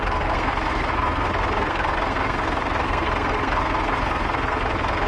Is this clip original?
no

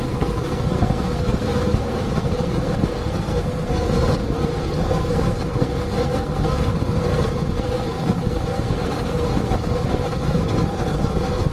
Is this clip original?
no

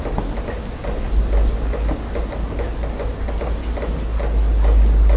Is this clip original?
yes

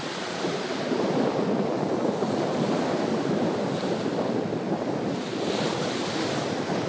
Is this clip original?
yes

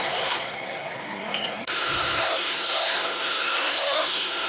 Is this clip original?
no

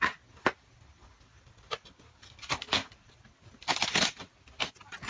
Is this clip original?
yes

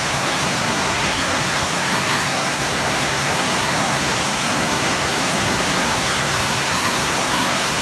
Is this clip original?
no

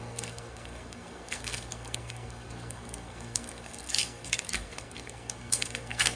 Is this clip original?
no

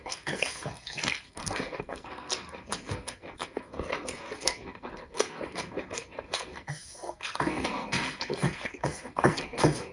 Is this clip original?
no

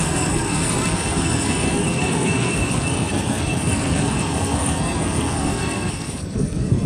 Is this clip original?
no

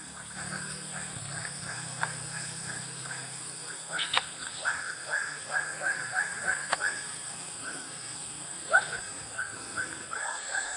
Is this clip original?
no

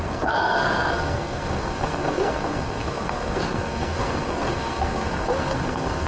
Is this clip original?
no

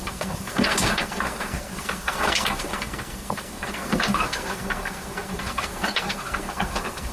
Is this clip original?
no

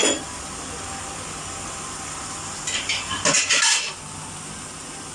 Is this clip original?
yes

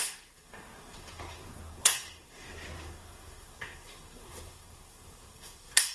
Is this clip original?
no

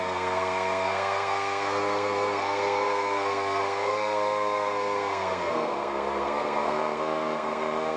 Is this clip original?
no